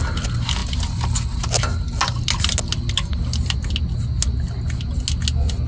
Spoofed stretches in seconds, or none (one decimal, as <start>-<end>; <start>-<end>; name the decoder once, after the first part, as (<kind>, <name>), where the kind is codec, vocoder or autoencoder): none